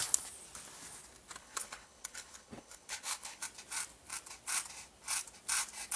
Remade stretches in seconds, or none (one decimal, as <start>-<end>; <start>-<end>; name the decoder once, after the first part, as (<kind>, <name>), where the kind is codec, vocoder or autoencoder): 1.4-3.4 (codec, HILCodec)